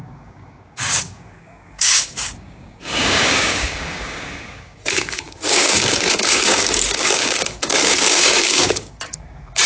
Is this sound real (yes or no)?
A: no